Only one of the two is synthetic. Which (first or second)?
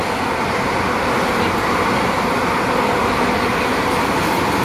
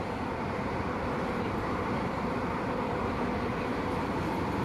second